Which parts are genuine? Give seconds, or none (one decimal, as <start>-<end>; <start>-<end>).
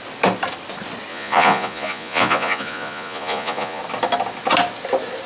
0.0-1.1; 3.8-5.3